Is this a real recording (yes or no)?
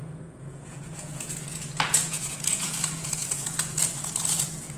no